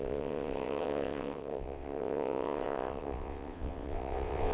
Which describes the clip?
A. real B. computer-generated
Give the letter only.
B